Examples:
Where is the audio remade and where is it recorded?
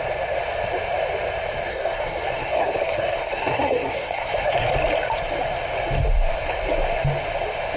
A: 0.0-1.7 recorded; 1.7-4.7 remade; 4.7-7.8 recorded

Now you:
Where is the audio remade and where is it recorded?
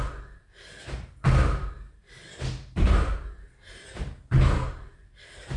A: 0.0-5.6 recorded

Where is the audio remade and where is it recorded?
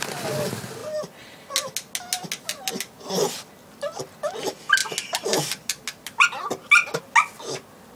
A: 0.0-8.0 recorded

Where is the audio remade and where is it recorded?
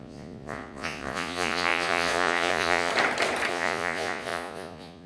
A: 0.0-2.9 remade; 2.9-3.5 recorded; 3.5-5.1 remade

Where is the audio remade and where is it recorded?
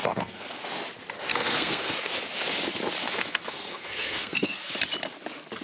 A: 0.0-0.7 remade; 0.7-1.3 recorded; 1.3-2.1 remade; 2.1-3.0 recorded; 3.0-4.7 remade; 4.7-5.6 recorded